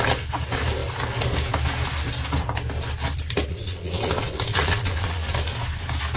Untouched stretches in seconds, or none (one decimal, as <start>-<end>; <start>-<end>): 0.0-3.5; 5.3-6.2